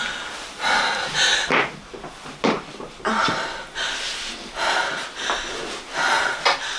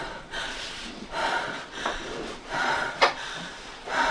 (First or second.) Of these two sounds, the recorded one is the first